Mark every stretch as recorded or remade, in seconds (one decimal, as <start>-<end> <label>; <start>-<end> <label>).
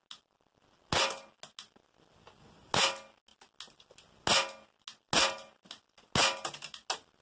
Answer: 0.0-7.2 recorded